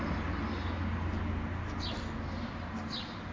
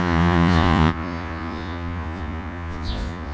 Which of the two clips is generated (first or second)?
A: second